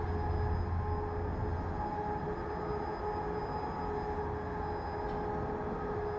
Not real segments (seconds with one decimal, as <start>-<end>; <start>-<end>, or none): none